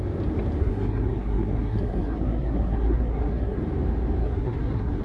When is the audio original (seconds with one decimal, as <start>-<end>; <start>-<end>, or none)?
0.0-0.6; 3.6-4.2